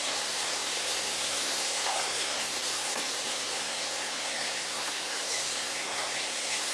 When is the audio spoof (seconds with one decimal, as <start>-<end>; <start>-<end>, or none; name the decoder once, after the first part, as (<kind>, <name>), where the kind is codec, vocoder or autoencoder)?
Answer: 0.0-6.7 (codec, SNAC)